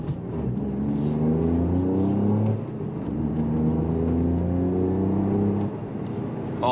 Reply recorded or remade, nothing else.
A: recorded